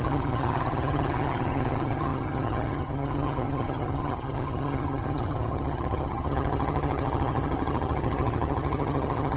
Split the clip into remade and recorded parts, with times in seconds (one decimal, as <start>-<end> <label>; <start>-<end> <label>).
0.0-9.4 remade